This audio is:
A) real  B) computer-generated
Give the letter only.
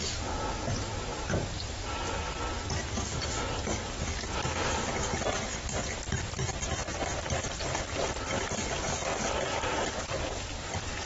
A